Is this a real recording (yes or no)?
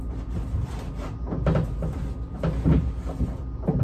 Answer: yes